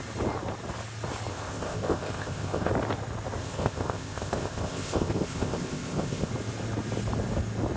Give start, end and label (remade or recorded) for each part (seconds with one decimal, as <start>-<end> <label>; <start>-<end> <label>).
0.0-1.3 recorded; 1.3-2.7 remade; 2.7-3.4 recorded; 3.4-6.3 remade; 6.3-7.8 recorded